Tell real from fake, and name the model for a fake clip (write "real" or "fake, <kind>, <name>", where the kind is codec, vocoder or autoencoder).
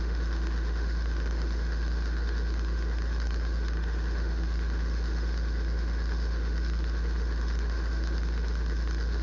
fake, autoencoder, DAC-VAE